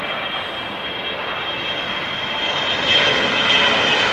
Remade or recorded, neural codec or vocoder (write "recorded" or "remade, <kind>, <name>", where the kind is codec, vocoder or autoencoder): recorded